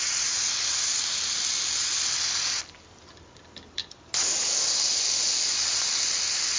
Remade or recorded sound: recorded